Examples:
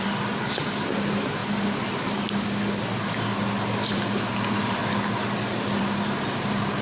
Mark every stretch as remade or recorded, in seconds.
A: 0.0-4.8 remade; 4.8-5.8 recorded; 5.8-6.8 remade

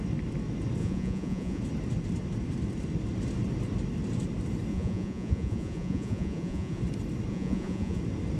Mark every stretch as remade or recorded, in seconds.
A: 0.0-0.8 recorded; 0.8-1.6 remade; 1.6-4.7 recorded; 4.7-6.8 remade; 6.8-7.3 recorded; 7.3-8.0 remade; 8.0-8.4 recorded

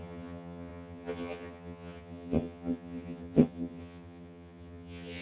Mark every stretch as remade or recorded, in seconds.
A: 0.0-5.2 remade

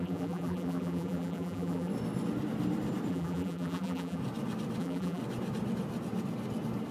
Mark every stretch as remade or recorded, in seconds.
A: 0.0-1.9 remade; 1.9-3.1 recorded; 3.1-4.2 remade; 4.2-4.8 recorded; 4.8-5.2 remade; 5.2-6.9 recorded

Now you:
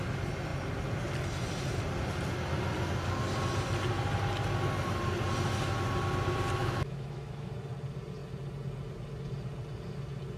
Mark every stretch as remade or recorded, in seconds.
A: 0.0-6.6 recorded; 6.6-7.5 remade; 7.5-10.4 recorded